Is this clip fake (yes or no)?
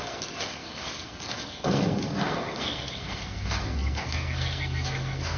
yes